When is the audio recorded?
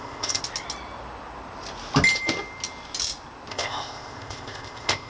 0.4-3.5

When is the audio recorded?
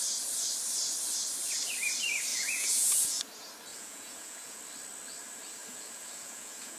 0.0-2.3; 3.2-3.7; 4.6-5.6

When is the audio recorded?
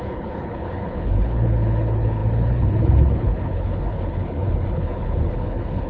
none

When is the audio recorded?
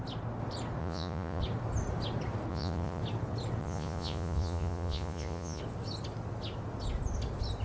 0.0-0.8; 1.4-2.5; 3.0-3.6; 5.6-7.6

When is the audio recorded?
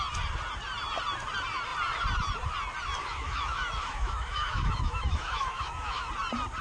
0.0-3.0; 6.1-6.6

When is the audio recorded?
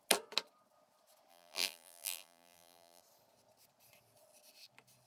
0.0-1.3; 3.0-5.1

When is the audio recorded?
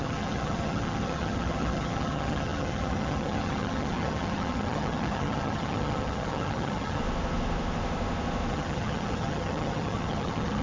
7.0-8.5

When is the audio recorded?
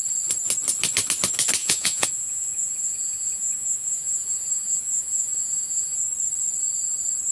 0.0-1.6; 6.0-7.3